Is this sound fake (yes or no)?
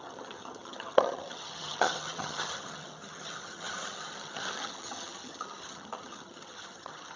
yes